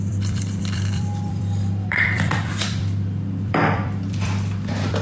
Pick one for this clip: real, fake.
fake